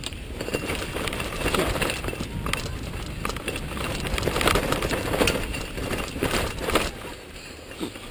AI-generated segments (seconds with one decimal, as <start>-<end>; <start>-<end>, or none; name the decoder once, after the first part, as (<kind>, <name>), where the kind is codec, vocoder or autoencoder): 0.0-1.6 (vocoder, BigVGAN v2); 5.6-8.1

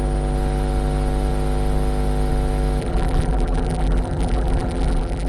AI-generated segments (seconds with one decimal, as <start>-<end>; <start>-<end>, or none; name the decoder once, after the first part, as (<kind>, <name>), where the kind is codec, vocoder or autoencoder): 2.8-5.3 (vocoder, BigVGAN v2)

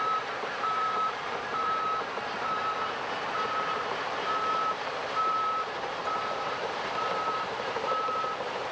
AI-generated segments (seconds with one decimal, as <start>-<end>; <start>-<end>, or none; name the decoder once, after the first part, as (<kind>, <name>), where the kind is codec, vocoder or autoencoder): 0.0-8.7 (vocoder, BigVGAN v2)

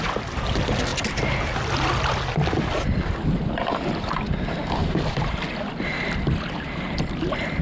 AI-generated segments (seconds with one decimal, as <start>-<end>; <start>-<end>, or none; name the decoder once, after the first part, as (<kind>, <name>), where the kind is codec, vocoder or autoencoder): none

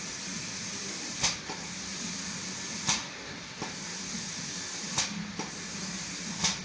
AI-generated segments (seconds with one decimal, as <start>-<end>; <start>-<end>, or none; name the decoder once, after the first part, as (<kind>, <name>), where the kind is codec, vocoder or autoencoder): 0.0-2.1 (vocoder, BigVGAN v2); 2.7-5.0

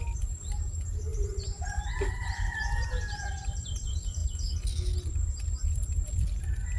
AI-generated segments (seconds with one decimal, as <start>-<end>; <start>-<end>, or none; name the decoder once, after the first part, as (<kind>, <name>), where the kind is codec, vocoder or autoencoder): 1.1-3.2 (vocoder, BigVGAN v2)